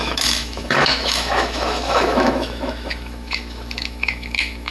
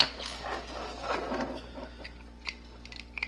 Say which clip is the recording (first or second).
second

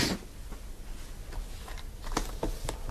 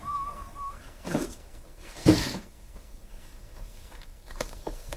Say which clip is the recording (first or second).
first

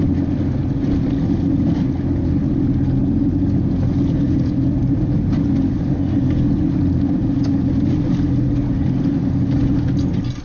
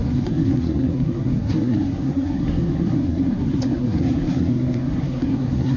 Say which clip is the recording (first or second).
first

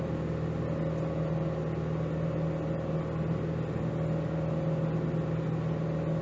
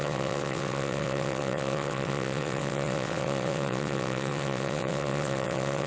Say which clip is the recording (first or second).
first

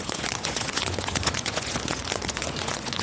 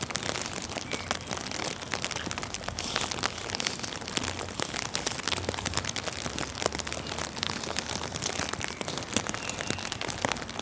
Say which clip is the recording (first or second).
second